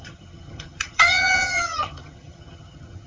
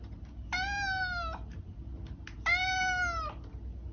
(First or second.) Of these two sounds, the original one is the second